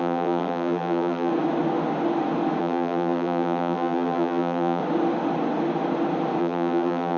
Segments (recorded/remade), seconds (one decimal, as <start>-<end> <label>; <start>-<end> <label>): 0.0-1.3 remade; 1.3-2.6 recorded; 2.6-4.8 remade; 4.8-6.4 recorded; 6.4-7.2 remade